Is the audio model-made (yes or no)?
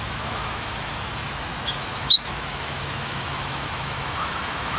yes